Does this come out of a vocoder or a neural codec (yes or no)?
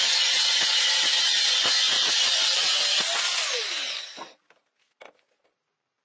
no